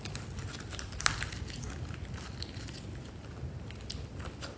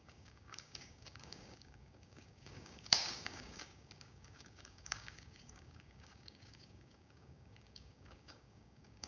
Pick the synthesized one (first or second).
second